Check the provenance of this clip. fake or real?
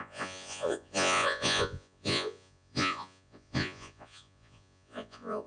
fake